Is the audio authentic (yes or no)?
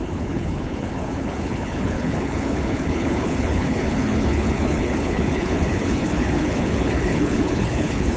no